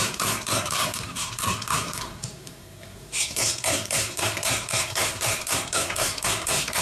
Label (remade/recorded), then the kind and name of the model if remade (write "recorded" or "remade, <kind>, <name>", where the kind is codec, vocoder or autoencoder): remade, codec, SNAC